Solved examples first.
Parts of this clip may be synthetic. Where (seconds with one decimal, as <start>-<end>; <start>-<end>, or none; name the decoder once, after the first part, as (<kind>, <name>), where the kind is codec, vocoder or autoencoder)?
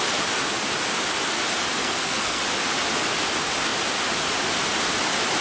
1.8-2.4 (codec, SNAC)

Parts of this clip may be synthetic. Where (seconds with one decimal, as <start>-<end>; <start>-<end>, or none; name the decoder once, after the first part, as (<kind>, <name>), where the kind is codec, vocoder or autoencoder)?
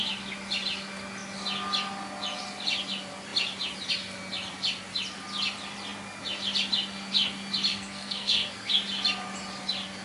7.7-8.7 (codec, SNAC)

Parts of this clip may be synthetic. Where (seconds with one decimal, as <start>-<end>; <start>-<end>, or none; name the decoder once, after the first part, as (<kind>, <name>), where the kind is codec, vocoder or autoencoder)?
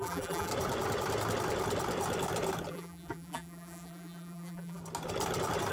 0.0-0.5 (vocoder, BigVGAN v2); 2.7-4.8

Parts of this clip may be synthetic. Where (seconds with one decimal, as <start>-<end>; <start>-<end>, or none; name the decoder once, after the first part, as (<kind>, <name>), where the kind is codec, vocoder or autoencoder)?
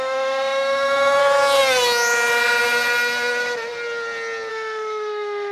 0.0-1.2 (autoencoder, DAC-VAE); 4.5-5.5